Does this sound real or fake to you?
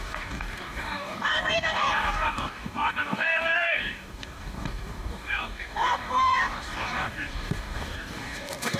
fake